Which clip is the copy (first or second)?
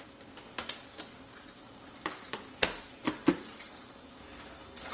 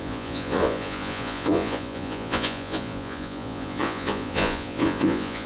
second